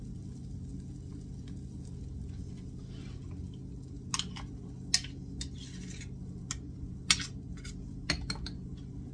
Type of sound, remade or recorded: recorded